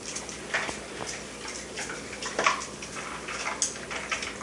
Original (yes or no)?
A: yes